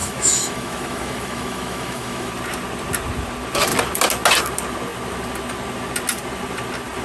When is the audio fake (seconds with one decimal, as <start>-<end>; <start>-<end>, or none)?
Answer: 0.0-2.3